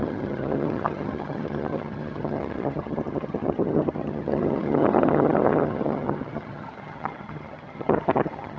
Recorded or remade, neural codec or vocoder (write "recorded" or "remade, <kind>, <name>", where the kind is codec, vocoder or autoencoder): remade, vocoder, HiFi-GAN